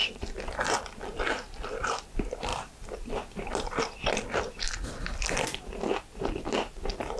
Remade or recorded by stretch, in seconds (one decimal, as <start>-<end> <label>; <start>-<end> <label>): 0.0-7.2 recorded